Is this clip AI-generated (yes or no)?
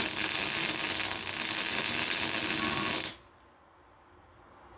no